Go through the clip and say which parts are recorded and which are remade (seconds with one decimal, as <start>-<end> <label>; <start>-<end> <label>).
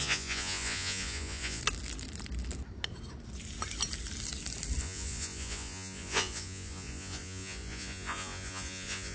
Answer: 0.0-1.6 remade; 1.6-4.8 recorded; 4.8-9.1 remade